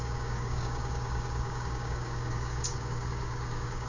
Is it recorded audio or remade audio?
remade